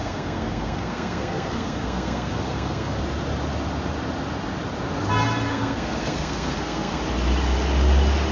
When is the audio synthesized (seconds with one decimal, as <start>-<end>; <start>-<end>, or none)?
0.0-3.0; 5.5-7.0